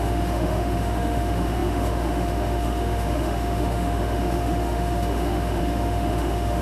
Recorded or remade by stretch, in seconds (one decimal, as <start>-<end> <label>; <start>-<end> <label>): 0.0-6.6 remade